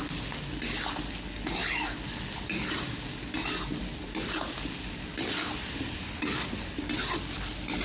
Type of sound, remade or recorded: recorded